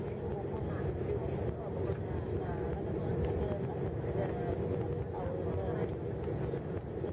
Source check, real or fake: real